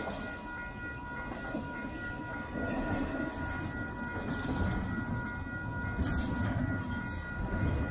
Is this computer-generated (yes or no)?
no